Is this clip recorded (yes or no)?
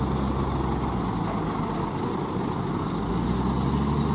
yes